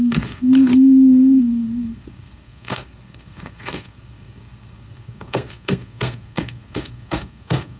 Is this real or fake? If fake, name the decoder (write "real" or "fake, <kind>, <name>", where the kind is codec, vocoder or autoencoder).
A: fake, codec, SNAC